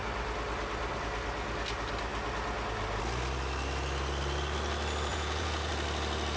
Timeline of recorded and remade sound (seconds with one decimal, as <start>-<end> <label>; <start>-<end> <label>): 0.0-5.1 recorded; 5.1-5.7 remade; 5.7-6.4 recorded